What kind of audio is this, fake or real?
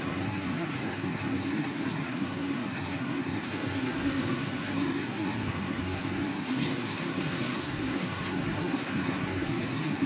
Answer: fake